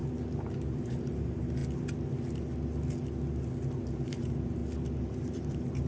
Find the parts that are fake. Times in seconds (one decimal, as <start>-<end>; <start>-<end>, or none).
0.7-1.6; 3.7-4.6; 5.1-5.9